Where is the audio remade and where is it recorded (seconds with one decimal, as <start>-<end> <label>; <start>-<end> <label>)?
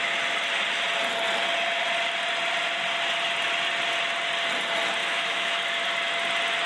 0.0-5.0 recorded; 5.0-5.6 remade; 5.6-6.7 recorded